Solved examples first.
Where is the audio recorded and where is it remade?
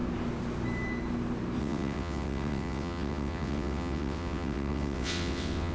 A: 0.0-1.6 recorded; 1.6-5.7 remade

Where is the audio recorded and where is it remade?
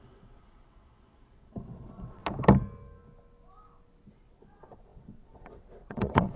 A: 0.0-2.2 remade; 2.2-4.1 recorded; 4.1-6.4 remade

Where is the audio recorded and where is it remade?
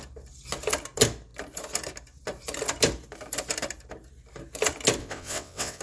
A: 0.0-5.0 recorded; 5.0-5.8 remade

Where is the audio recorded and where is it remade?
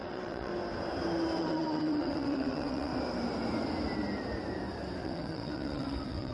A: 0.0-0.5 remade; 0.5-1.4 recorded; 1.4-2.9 remade; 2.9-5.0 recorded; 5.0-6.3 remade